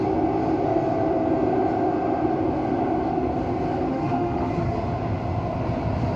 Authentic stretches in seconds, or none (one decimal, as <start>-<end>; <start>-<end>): 0.0-3.9; 4.5-6.2